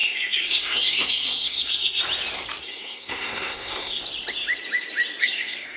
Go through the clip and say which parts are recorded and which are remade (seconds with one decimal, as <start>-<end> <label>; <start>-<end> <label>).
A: 0.0-2.0 remade; 2.0-2.6 recorded; 2.6-4.0 remade; 4.0-5.2 recorded; 5.2-5.8 remade